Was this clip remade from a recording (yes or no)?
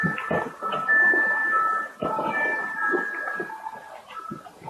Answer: no